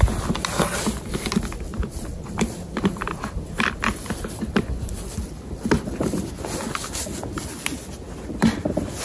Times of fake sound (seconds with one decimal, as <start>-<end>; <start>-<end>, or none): 1.7-6.3